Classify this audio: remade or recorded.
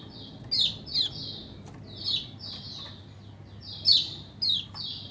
recorded